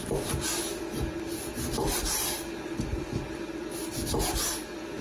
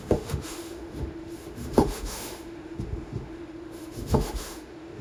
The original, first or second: first